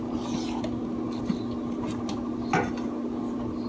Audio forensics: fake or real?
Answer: real